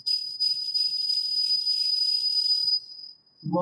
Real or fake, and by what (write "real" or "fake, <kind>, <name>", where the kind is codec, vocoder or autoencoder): fake, vocoder, Vocos